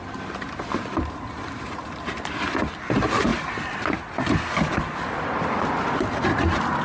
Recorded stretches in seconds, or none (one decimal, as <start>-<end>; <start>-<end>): 0.0-6.8